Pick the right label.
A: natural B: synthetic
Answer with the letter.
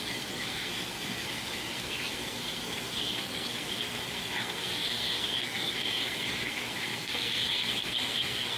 B